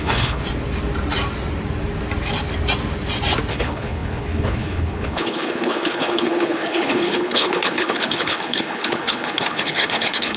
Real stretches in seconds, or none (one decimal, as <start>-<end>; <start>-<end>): 0.4-3.5